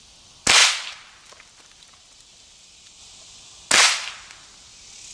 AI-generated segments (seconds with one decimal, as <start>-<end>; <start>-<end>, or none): none

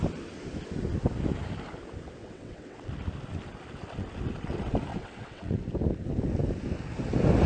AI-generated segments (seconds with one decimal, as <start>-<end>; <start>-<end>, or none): 2.2-2.9; 4.9-5.6